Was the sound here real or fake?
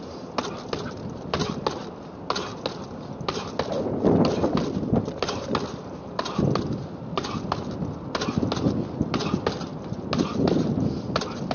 real